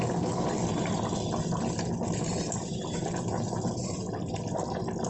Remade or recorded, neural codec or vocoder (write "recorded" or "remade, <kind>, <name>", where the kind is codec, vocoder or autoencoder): recorded